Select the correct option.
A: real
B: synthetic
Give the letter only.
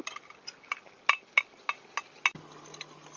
A